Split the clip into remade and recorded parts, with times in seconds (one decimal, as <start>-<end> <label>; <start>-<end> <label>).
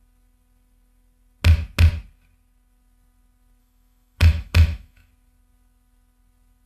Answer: 0.0-3.6 recorded; 3.6-5.1 remade; 5.1-6.7 recorded